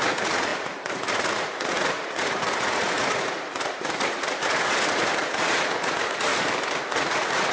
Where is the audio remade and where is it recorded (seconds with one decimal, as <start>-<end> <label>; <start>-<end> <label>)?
0.0-6.3 remade; 6.3-6.9 recorded; 6.9-7.5 remade